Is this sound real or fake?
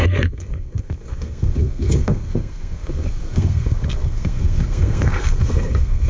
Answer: fake